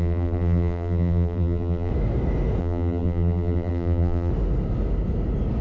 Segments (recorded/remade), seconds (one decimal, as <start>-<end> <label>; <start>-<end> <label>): 0.0-1.9 remade; 1.9-2.6 recorded; 2.6-4.3 remade; 4.3-5.6 recorded